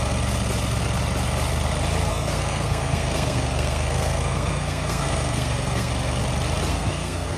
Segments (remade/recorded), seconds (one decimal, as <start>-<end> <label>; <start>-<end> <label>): 0.0-2.1 recorded; 2.1-5.9 remade; 5.9-6.7 recorded; 6.7-7.4 remade